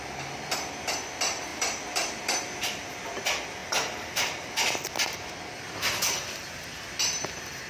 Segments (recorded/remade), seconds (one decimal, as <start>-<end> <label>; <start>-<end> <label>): 0.0-1.5 recorded; 1.5-2.2 remade; 2.2-3.6 recorded; 3.6-4.9 remade; 4.9-7.7 recorded